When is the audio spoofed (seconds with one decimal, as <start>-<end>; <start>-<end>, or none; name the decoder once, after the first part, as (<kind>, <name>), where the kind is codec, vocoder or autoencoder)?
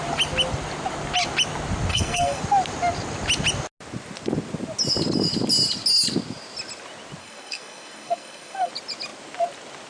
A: 1.9-2.4 (codec, SNAC); 7.2-8.7